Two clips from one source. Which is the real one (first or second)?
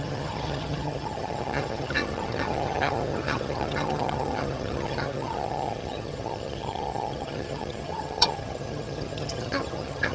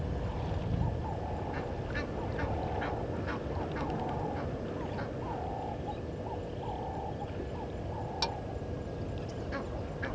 second